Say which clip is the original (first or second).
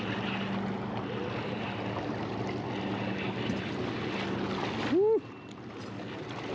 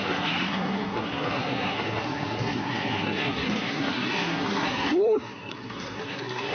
first